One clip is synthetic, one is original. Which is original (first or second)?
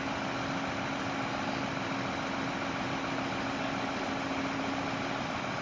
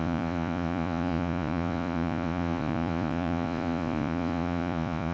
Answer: first